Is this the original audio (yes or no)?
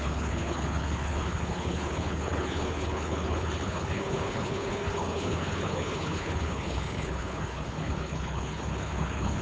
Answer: no